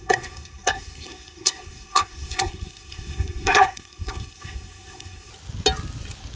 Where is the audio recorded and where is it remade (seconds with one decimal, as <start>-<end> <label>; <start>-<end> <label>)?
0.0-5.3 remade; 5.3-6.4 recorded